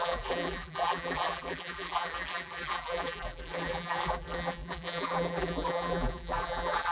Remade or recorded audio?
remade